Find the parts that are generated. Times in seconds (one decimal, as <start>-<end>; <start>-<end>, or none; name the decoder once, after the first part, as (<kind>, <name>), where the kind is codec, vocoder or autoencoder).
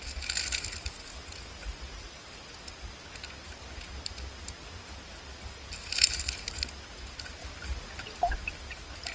none